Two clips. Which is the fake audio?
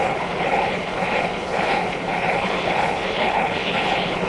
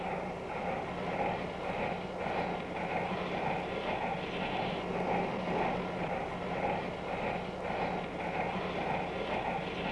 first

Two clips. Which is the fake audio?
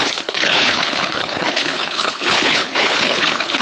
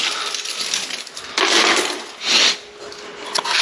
first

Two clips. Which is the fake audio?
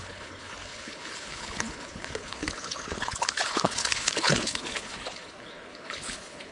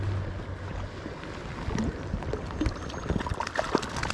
first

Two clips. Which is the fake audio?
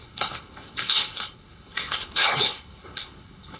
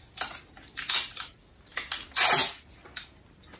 first